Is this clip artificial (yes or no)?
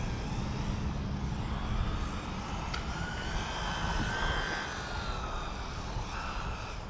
no